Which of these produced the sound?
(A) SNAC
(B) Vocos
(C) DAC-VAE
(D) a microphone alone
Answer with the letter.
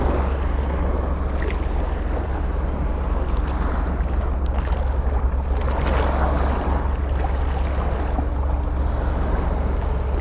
D